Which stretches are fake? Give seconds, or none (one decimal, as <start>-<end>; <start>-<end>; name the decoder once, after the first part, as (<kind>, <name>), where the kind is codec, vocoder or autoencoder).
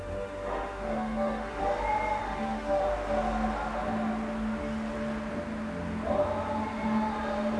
0.0-1.6 (autoencoder, DAC-VAE); 2.2-2.8